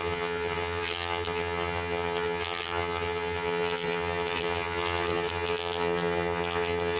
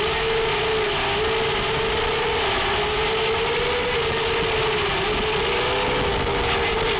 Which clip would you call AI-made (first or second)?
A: first